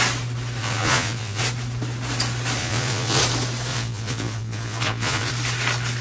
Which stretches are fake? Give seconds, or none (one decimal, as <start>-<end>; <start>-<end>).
0.6-1.4; 2.6-3.2; 3.7-5.3

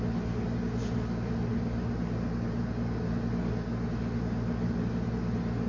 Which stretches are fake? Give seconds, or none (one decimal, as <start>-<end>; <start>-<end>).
none

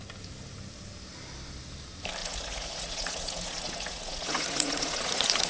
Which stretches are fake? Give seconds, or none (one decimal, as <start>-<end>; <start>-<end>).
2.2-5.5

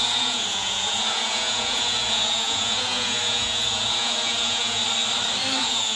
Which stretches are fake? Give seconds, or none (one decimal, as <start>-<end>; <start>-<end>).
0.0-4.8; 5.6-6.0